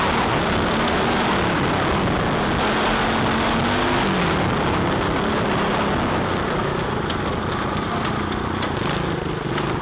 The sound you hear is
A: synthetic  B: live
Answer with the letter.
B